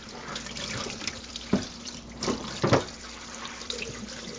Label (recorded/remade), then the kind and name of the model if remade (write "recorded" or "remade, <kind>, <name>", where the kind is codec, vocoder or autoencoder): remade, vocoder, BigVGAN v2